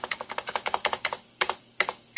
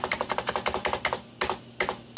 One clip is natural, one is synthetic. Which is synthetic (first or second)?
first